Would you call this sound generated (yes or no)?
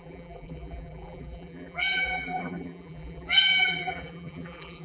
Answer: yes